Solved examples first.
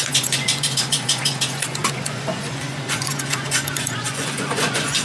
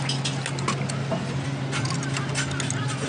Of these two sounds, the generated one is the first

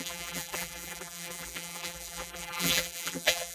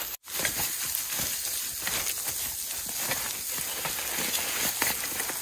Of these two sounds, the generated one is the first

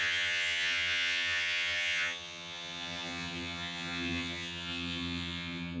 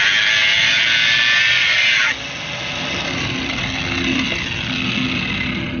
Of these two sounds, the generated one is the first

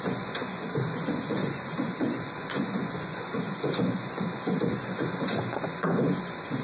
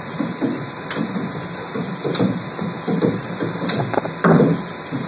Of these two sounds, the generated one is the first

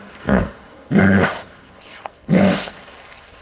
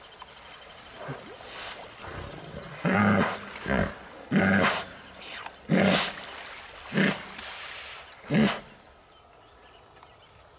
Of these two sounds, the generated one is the first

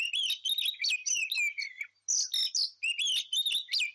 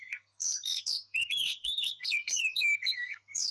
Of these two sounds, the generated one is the second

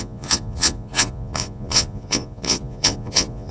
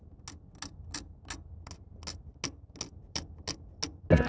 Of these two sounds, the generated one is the first